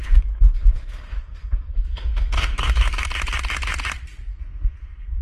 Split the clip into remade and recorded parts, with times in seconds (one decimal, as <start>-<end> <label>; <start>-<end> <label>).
0.0-3.1 remade; 3.1-4.3 recorded; 4.3-5.2 remade